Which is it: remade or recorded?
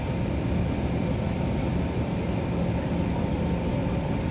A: recorded